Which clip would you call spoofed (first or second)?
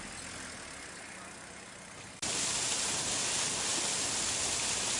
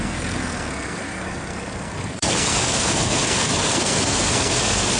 second